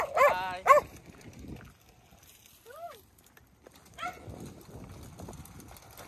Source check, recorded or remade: recorded